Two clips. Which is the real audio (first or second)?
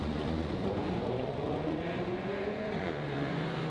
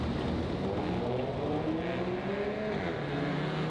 second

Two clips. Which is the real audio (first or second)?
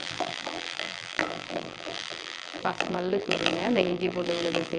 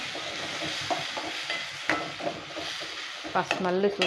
second